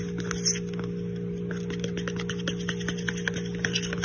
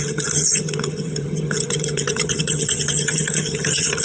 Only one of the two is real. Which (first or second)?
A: first